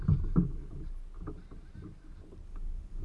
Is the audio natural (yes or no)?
yes